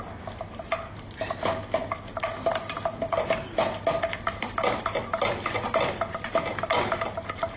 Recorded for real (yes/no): yes